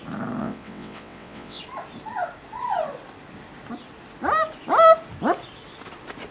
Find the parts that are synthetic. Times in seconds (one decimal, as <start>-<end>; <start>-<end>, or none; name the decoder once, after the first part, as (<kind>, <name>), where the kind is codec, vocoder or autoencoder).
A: 0.4-1.6 (vocoder, WaveNeXt)